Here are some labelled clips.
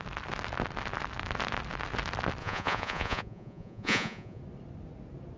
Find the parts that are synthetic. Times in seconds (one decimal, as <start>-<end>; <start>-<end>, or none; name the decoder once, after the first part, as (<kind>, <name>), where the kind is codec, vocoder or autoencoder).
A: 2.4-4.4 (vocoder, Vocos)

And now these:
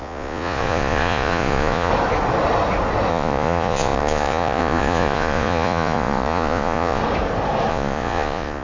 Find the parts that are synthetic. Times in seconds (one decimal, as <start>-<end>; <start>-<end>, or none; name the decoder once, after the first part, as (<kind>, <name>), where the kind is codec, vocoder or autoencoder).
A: 0.0-1.9 (vocoder, Vocos); 3.1-7.0; 7.7-8.6

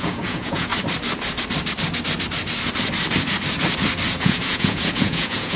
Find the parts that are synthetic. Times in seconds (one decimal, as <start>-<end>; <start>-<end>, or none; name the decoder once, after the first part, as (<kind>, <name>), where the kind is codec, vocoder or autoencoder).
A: 0.0-0.7 (vocoder, Vocos); 4.1-5.6

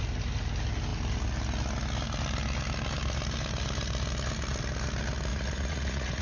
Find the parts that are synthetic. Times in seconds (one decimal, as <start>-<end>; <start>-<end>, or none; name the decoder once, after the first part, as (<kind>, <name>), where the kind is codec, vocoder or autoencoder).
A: 5.3-6.2 (vocoder, Vocos)